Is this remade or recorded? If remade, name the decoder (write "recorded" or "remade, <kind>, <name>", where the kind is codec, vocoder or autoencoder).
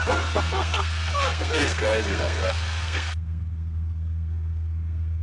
remade, codec, SNAC